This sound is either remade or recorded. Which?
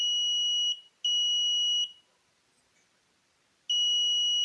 recorded